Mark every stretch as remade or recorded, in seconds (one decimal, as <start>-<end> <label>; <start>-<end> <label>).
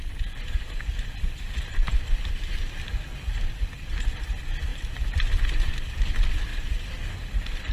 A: 0.0-7.7 recorded